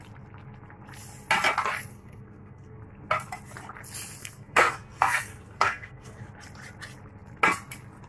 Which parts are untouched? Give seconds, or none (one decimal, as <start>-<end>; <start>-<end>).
0.0-1.9; 2.8-4.2; 6.2-8.1